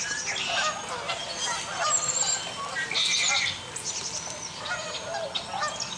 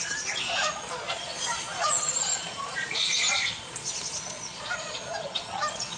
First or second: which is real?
first